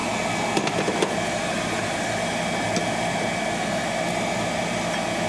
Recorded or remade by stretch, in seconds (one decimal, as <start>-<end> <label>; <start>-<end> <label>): 0.0-5.3 recorded